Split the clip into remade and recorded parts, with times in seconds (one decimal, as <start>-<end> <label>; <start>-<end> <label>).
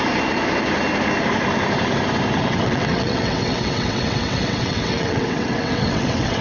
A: 0.0-2.4 recorded; 2.4-6.4 remade